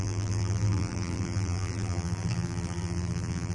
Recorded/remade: remade